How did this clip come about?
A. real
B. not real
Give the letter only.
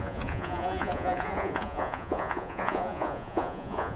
B